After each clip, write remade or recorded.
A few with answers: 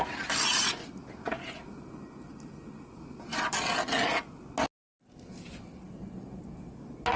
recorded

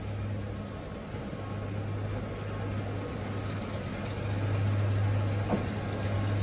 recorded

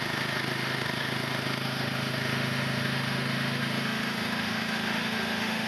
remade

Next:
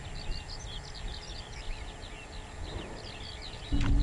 recorded